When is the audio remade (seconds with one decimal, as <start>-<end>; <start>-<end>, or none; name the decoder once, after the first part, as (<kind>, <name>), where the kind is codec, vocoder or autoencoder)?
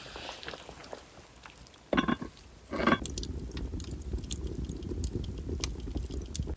none